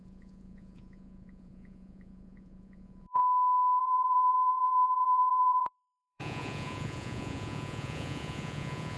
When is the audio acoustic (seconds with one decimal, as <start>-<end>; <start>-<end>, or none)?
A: 3.2-3.8